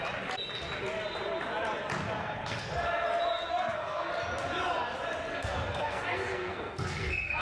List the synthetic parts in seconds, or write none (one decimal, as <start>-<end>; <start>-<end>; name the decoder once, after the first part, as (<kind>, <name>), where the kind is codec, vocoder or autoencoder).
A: 2.2-2.7 (codec, SNAC); 3.5-4.1; 5.3-7.4